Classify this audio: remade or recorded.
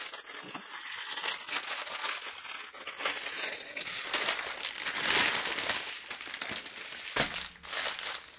recorded